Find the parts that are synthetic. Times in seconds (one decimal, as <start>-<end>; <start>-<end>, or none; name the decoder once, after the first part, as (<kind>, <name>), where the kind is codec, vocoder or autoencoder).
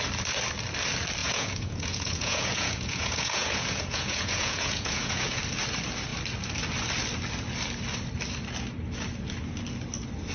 1.2-5.4 (vocoder, Vocos)